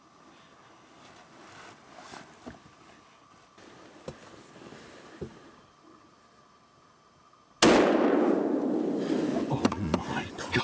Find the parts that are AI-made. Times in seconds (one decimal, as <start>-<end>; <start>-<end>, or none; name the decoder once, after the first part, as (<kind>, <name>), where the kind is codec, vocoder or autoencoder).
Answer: 9.3-10.6 (vocoder, Vocos)